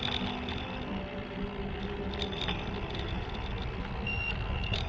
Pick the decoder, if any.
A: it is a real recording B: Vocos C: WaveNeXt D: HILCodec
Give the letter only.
A